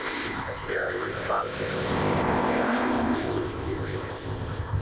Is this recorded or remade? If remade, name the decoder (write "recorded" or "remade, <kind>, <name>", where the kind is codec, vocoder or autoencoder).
remade, codec, ZipCodec